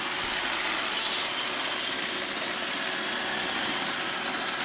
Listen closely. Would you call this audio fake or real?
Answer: real